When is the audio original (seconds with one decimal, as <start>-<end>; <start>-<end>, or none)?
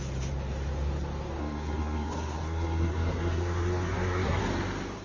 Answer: 0.0-1.4; 4.4-5.0